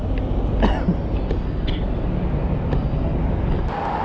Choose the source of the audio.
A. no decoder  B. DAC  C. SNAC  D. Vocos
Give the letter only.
A